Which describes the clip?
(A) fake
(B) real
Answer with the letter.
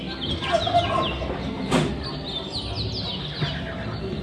B